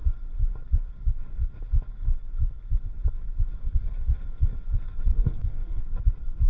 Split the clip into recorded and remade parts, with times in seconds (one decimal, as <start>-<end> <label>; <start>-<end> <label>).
0.0-3.6 recorded; 3.6-4.6 remade; 4.6-5.1 recorded; 5.1-5.8 remade; 5.8-6.5 recorded